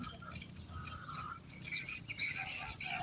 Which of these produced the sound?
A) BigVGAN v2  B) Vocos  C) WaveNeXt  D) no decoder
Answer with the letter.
D